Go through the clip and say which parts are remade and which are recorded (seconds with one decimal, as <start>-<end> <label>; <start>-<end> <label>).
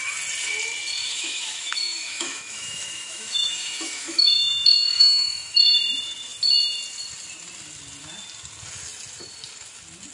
0.0-1.0 recorded; 1.0-5.6 remade; 5.6-10.1 recorded